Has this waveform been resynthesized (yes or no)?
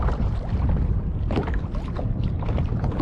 no